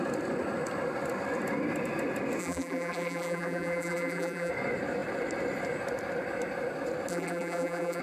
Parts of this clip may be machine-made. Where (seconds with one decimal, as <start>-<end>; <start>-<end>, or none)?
2.4-4.5; 7.1-8.0